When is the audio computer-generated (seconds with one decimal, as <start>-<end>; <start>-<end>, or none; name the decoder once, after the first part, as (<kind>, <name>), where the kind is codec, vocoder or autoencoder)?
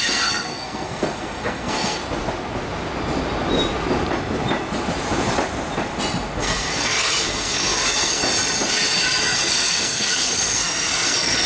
0.0-2.0 (codec, SNAC); 6.4-8.2; 9.2-11.5